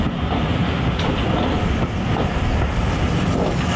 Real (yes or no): yes